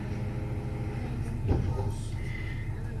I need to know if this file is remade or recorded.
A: recorded